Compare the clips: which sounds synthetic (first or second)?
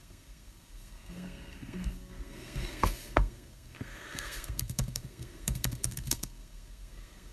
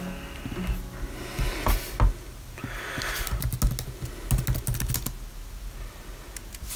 first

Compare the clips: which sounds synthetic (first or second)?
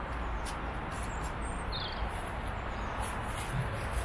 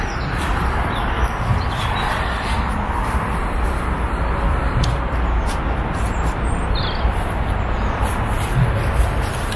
second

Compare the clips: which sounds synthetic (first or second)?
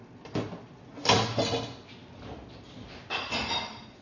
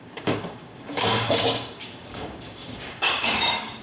second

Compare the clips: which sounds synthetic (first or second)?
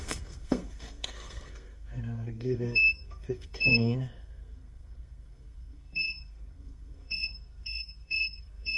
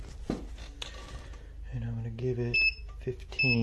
first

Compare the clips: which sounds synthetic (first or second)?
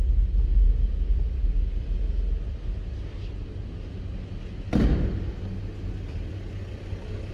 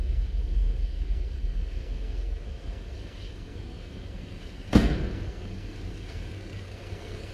second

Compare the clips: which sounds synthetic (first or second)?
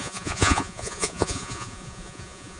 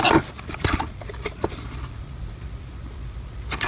first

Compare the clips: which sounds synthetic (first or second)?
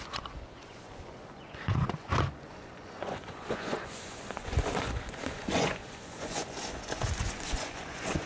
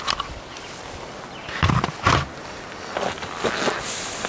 first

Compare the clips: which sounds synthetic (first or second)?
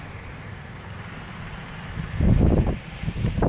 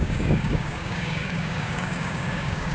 second